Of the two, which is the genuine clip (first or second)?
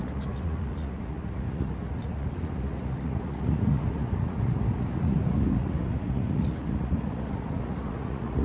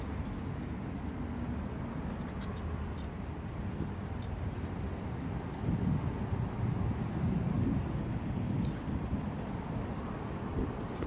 second